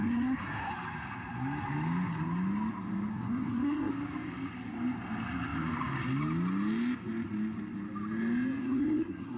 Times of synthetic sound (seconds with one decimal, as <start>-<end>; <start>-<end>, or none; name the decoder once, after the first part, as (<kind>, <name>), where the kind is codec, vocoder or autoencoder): 0.0-0.7 (codec, SNAC); 3.1-3.9; 8.6-9.4